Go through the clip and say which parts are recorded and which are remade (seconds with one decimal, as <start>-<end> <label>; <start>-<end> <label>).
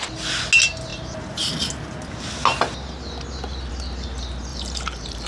0.0-4.5 recorded; 4.5-5.3 remade